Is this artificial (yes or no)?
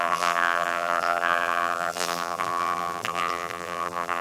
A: yes